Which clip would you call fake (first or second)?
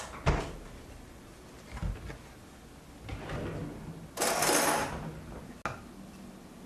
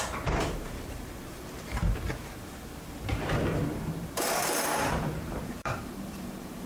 second